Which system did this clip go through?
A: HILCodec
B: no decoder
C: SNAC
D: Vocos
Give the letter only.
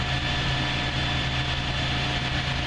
B